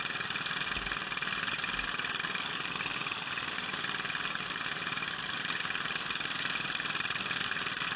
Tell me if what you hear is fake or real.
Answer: real